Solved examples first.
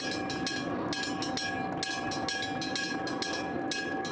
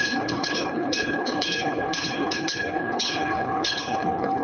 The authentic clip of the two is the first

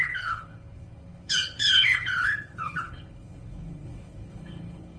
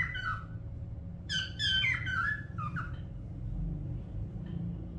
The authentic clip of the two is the second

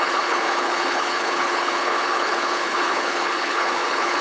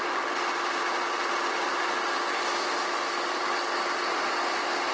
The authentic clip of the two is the second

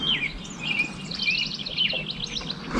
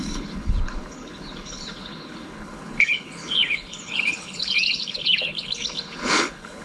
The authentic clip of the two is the first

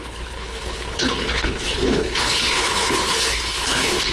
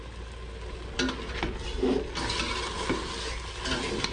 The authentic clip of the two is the second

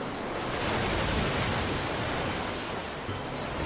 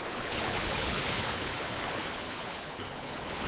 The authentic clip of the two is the first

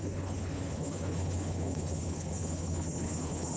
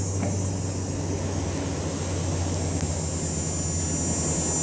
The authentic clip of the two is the second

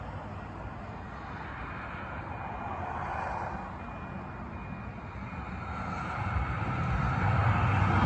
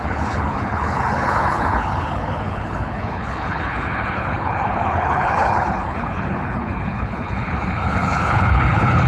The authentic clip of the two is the first